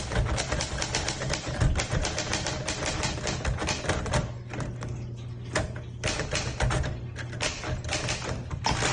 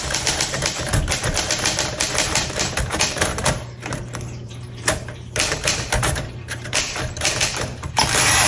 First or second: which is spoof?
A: second